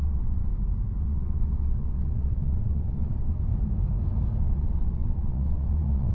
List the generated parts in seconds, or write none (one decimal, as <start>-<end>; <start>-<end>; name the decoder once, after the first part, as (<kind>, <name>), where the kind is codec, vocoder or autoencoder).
0.0-0.5 (vocoder, WaveNeXt); 1.0-3.5; 4.4-6.1